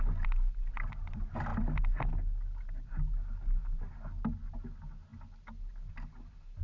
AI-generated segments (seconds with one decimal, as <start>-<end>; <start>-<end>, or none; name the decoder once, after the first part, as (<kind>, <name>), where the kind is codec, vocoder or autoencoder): none